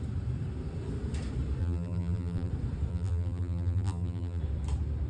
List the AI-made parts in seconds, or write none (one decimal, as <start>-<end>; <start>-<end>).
1.6-2.5; 2.9-4.4